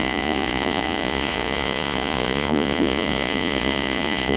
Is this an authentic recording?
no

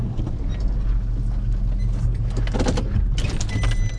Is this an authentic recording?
yes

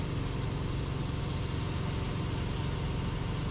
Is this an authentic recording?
yes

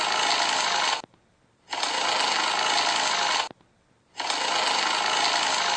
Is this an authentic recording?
yes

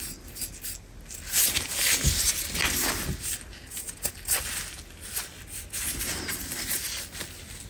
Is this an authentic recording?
yes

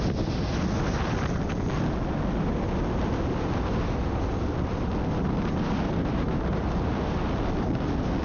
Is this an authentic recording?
yes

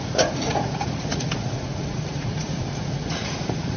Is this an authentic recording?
no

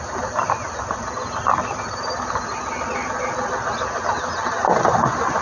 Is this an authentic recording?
yes